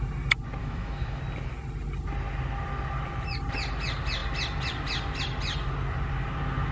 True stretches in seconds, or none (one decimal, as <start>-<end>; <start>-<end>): 0.0-0.6; 1.2-6.7